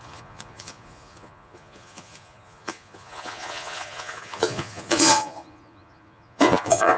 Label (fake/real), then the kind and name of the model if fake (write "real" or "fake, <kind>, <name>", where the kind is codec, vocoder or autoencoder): fake, vocoder, Vocos